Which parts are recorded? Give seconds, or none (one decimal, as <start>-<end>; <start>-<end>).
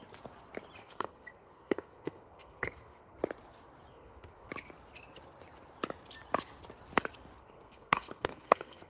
0.0-0.8; 3.2-3.9; 4.5-7.4